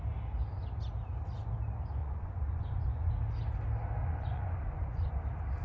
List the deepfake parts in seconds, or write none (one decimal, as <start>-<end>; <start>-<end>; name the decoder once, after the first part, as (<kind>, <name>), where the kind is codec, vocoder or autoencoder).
2.0-3.1 (vocoder, Vocos); 4.0-5.1

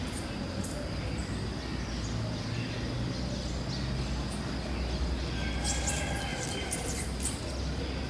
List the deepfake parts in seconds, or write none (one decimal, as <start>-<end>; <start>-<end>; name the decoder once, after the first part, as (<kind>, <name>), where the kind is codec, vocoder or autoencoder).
6.3-7.4 (vocoder, BigVGAN v2)

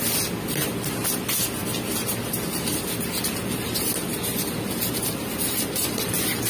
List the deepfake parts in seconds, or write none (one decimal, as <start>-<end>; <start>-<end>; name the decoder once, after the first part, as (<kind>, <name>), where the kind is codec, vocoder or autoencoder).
none

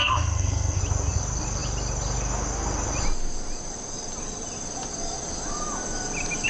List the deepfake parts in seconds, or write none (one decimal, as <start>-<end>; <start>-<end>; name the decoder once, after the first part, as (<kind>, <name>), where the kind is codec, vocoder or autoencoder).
0.0-0.8 (codec, SNAC)

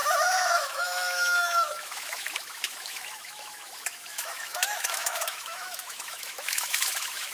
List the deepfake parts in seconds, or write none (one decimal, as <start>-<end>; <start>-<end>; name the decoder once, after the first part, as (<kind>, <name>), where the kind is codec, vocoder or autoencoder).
0.0-7.3 (autoencoder, DAC-VAE)